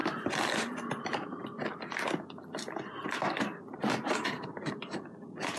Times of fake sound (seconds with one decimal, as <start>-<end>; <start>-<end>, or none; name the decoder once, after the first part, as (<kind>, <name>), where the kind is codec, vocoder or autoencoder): 3.4-5.6 (vocoder, BigVGAN v2)